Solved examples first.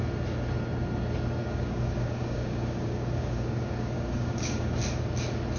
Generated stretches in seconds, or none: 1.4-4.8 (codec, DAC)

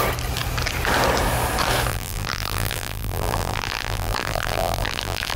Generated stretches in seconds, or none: 1.9-5.4 (vocoder, BigVGAN v2)

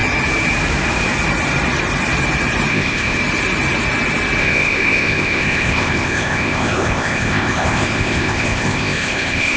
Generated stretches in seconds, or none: 2.7-3.2 (codec, ZipCodec); 4.4-9.6

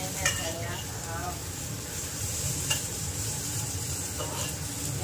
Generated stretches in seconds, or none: 1.2-4.2 (vocoder, BigVGAN v2)

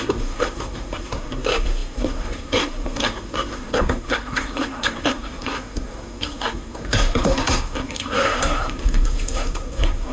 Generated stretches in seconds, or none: 0.0-10.1 (codec, SNAC)